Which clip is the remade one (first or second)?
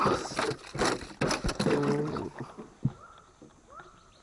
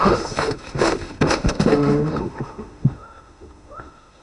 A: second